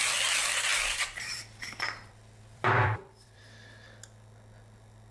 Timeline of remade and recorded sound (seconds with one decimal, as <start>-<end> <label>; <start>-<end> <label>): 0.0-0.7 recorded; 0.7-3.4 remade; 3.4-5.1 recorded